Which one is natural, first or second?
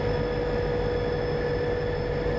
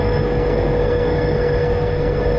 first